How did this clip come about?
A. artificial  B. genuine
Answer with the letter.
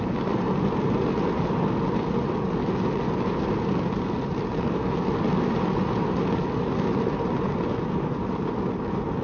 B